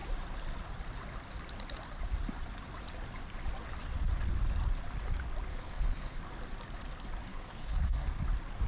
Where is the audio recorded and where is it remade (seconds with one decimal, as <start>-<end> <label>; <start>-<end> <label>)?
0.0-5.5 recorded; 5.5-6.2 remade; 6.2-7.3 recorded; 7.3-8.2 remade; 8.2-8.7 recorded